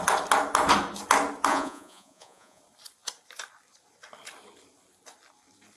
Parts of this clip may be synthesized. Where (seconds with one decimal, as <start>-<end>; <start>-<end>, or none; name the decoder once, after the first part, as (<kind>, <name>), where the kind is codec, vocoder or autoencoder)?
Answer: 1.5-2.6 (vocoder, Vocos)